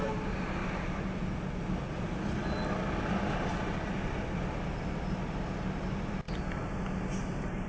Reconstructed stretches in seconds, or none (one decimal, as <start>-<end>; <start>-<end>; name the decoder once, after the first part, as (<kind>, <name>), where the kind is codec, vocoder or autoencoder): none